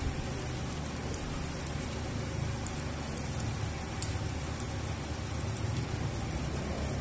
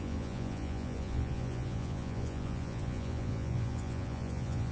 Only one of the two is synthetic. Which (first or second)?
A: second